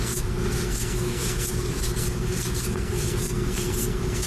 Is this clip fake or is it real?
fake